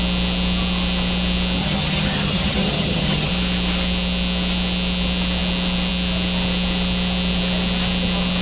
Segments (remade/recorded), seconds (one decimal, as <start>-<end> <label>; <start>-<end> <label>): 0.0-1.6 recorded; 1.6-3.3 remade; 3.3-8.4 recorded